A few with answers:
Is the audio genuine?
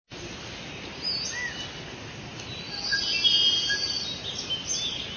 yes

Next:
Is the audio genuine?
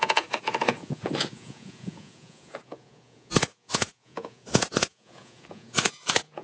no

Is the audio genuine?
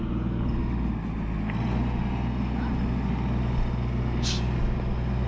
yes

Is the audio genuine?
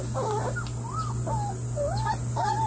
yes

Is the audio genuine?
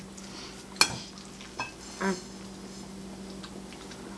yes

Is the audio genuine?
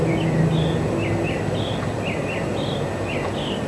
yes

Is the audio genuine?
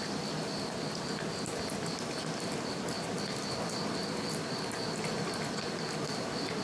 yes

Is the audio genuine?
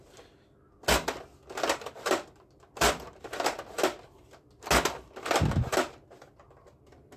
yes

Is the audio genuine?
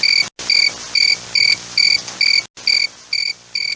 yes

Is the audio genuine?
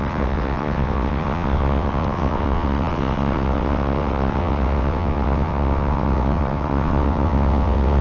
no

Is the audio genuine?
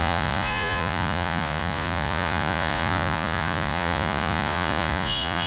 no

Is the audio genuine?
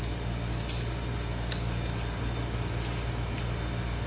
yes